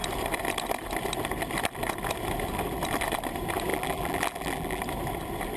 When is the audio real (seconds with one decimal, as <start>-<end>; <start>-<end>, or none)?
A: 0.0-3.7; 4.8-5.6